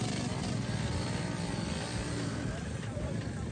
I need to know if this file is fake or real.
real